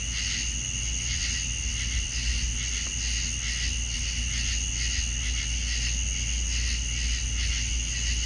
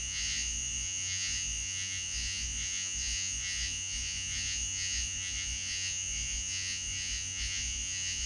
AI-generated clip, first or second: second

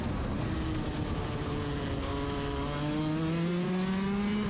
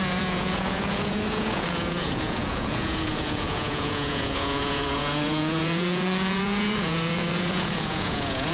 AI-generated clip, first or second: second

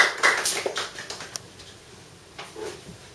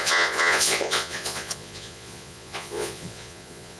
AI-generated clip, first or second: second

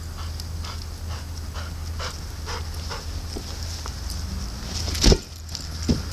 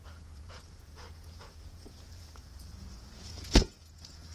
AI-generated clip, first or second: second